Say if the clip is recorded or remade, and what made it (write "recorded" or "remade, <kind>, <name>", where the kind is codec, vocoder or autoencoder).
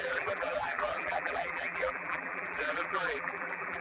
remade, vocoder, BigVGAN v2